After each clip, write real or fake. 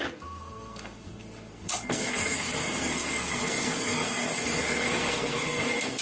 fake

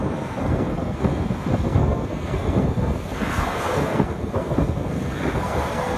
fake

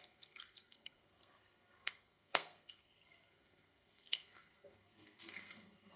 fake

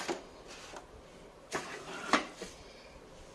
real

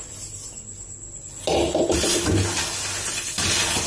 real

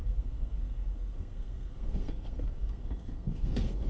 fake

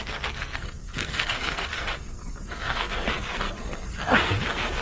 fake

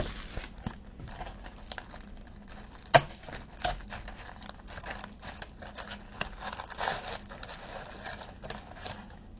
real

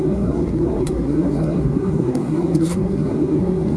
fake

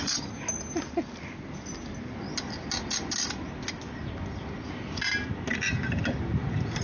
real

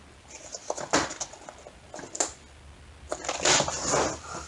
real